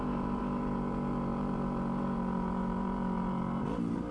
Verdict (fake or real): fake